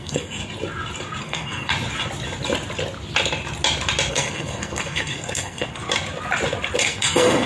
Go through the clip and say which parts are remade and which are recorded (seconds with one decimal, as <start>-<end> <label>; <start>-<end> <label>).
0.0-0.4 remade; 0.4-1.2 recorded; 1.2-1.7 remade; 1.7-4.1 recorded; 4.1-5.8 remade; 5.8-6.8 recorded; 6.8-7.5 remade